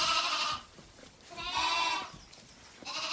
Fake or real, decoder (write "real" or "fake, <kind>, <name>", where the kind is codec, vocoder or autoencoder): real